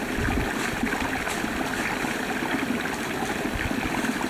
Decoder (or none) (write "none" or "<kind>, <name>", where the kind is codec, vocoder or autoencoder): none